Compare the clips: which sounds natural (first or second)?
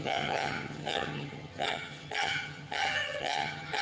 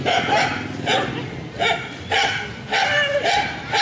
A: second